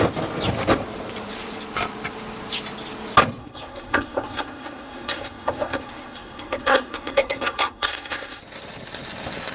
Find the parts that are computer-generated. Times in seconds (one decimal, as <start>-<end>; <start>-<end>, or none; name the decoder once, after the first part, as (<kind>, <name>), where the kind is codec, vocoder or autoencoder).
3.4-8.4 (codec, SNAC)